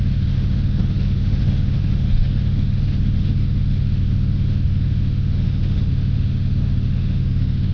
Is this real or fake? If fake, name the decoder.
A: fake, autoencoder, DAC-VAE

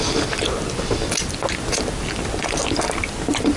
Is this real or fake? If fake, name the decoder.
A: real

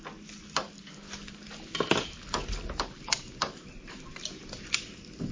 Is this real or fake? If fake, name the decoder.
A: real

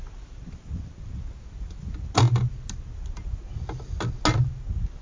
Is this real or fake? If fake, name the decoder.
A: real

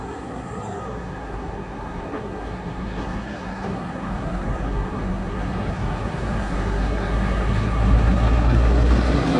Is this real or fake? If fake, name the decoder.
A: fake, codec, SNAC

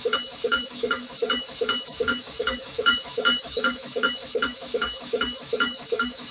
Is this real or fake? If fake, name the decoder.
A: fake, autoencoder, DAC-VAE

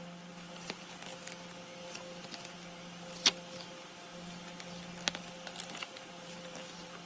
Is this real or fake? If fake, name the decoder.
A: real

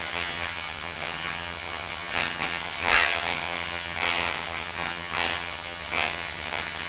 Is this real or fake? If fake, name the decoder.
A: fake, vocoder, HiFi-GAN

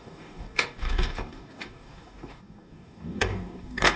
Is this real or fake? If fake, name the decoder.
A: fake, codec, DAC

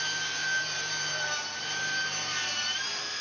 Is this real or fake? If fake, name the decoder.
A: fake, vocoder, BigVGAN v2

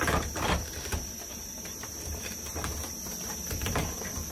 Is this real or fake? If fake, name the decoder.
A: fake, vocoder, BigVGAN v2